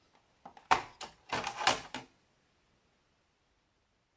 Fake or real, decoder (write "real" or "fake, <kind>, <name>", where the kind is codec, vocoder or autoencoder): real